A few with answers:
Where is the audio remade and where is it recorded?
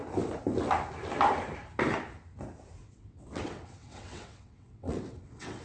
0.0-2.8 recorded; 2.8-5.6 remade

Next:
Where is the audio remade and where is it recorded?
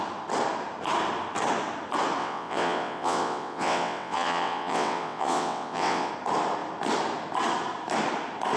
0.0-2.2 recorded; 2.2-6.1 remade; 6.1-8.6 recorded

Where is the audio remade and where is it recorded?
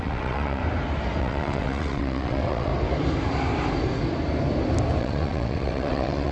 0.0-0.6 remade; 0.6-1.2 recorded; 1.2-2.7 remade; 2.7-5.0 recorded; 5.0-6.3 remade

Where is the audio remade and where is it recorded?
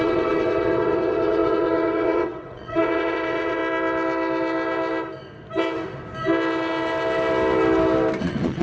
0.0-3.6 remade; 3.6-8.2 recorded; 8.2-8.6 remade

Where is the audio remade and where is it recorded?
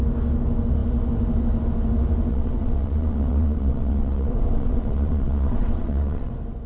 0.0-2.3 recorded; 2.3-6.3 remade; 6.3-6.7 recorded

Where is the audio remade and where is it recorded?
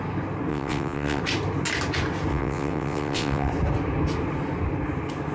0.0-0.5 recorded; 0.5-1.2 remade; 1.2-2.3 recorded; 2.3-3.5 remade; 3.5-5.3 recorded